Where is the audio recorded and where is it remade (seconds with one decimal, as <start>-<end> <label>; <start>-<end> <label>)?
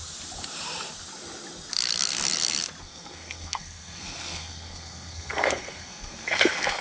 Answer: 0.0-2.8 recorded; 2.8-6.8 remade